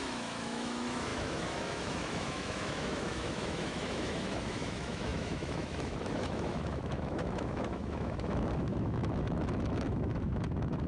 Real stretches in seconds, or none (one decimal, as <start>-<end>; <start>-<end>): none